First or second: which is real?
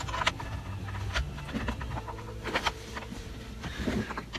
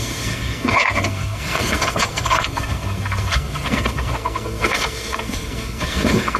first